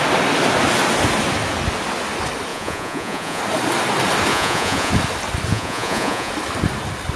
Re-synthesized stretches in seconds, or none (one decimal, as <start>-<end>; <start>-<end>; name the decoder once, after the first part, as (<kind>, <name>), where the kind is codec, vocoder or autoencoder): 2.5-3.4 (vocoder, Vocos); 4.3-4.9; 5.5-6.3